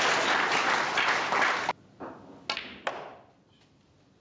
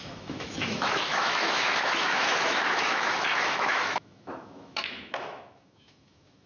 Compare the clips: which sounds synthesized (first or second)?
second